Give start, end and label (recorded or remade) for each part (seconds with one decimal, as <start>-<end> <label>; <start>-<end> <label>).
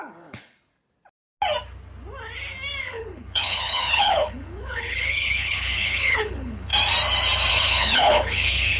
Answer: 0.0-0.7 remade; 0.7-2.8 recorded; 2.8-6.7 remade; 6.7-7.5 recorded; 7.5-8.8 remade